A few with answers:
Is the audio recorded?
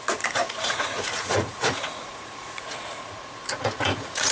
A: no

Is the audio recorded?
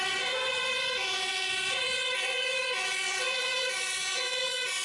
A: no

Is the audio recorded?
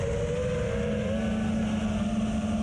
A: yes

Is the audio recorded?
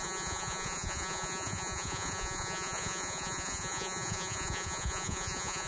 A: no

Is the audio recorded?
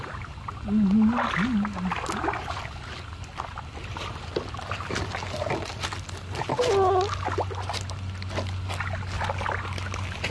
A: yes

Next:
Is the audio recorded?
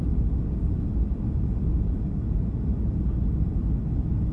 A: yes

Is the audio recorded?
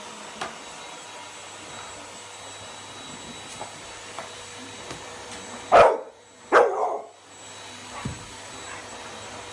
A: yes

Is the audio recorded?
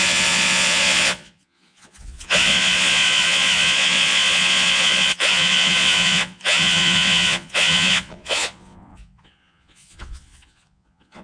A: no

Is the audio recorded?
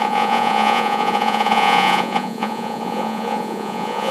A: no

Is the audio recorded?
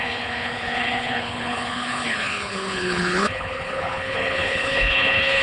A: no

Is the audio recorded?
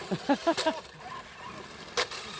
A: yes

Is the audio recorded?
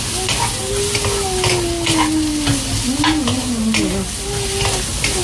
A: yes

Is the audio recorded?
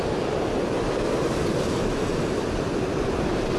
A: yes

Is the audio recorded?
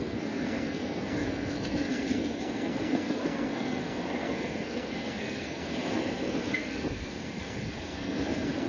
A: no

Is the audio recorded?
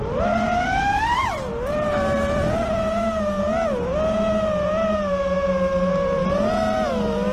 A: no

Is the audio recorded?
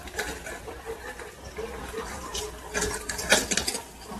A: yes